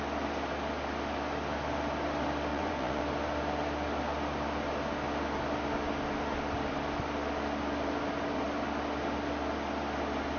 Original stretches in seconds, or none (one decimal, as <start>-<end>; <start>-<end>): 0.0-2.5; 3.0-10.4